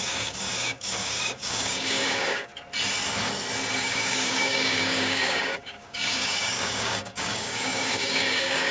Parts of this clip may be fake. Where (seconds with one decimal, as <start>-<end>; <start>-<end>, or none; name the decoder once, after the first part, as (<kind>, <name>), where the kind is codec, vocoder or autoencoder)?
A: 0.0-2.5 (codec, DAC); 3.8-8.7